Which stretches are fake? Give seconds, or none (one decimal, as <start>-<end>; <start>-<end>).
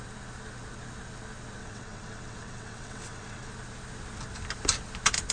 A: 1.6-3.5